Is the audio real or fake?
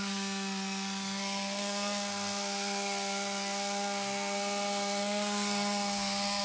fake